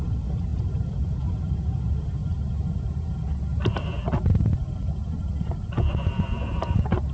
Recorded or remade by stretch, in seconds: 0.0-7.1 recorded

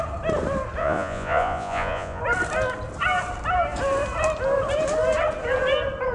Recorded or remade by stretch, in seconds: 0.0-0.8 recorded; 0.8-2.2 remade; 2.2-6.1 recorded

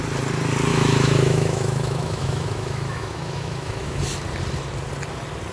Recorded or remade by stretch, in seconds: 0.0-0.7 recorded; 0.7-4.0 remade; 4.0-5.5 recorded

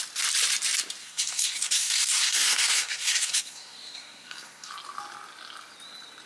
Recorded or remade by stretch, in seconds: 0.0-1.0 recorded; 1.0-4.7 remade; 4.7-6.3 recorded

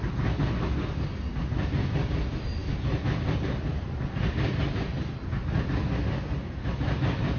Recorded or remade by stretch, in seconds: 0.0-7.4 recorded

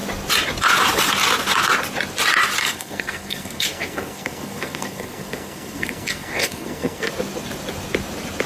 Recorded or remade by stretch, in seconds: 0.0-2.6 recorded; 2.6-7.1 remade; 7.1-8.5 recorded